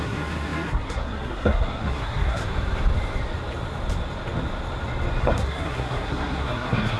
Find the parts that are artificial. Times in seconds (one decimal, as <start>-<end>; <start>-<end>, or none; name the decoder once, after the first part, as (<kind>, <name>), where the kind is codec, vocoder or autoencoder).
0.0-2.4 (codec, SNAC); 5.2-7.0